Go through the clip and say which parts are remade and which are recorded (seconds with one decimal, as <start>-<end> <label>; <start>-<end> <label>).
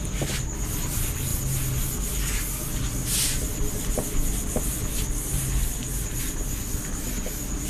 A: 0.0-7.7 recorded